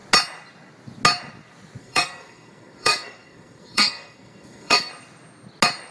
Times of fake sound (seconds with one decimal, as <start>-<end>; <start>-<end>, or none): 1.8-4.9